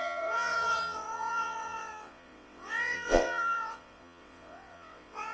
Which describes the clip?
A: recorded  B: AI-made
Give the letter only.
B